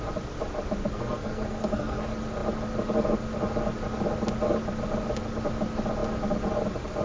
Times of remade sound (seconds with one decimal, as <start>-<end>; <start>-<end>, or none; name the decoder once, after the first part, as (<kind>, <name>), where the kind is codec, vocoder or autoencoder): 0.8-2.0 (codec, SNAC)